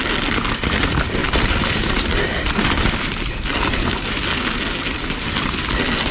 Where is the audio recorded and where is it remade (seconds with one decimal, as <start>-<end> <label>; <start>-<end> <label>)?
0.0-1.2 recorded; 1.2-3.9 remade; 3.9-6.1 recorded